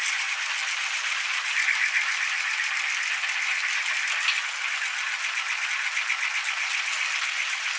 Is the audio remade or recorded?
recorded